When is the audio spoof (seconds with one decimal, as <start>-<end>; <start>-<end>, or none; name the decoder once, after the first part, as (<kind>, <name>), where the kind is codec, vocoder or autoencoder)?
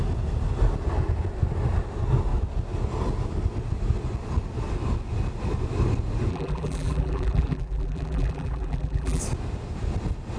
6.3-9.2 (vocoder, BigVGAN v2)